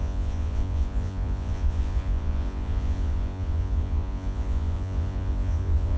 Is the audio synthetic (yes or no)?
yes